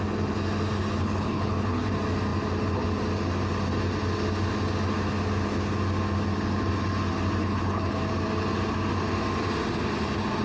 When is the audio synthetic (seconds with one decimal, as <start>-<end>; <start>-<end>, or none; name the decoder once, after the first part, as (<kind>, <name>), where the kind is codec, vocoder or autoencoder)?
1.0-1.9 (codec, HILCodec); 7.4-8.0